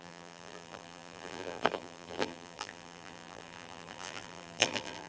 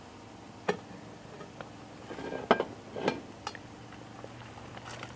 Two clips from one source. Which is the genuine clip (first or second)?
second